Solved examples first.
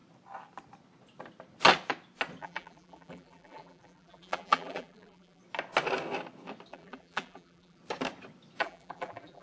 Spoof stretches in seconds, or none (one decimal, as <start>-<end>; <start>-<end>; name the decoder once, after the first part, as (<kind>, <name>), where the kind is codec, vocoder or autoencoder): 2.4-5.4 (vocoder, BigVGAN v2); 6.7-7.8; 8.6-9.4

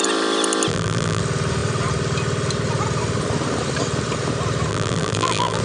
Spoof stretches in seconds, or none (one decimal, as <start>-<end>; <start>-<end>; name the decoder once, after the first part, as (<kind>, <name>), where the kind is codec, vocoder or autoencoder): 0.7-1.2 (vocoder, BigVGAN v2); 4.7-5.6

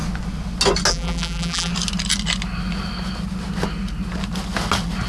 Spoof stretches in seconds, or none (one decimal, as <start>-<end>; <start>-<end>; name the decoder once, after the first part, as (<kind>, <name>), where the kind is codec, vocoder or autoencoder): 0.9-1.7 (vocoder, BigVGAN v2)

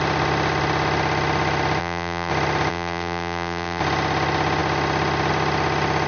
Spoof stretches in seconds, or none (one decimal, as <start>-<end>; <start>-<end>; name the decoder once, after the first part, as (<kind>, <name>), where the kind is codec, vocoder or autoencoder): 1.8-2.3 (vocoder, BigVGAN v2); 2.7-3.8

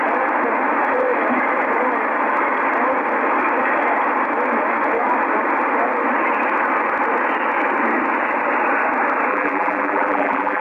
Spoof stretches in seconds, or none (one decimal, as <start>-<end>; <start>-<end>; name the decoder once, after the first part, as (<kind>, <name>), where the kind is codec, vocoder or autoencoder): 9.3-10.6 (vocoder, BigVGAN v2)